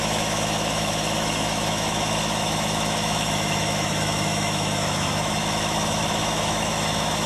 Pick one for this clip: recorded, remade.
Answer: remade